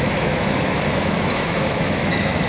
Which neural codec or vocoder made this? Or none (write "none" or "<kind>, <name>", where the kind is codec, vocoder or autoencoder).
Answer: autoencoder, DAC-VAE